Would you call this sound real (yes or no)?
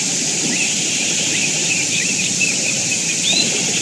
no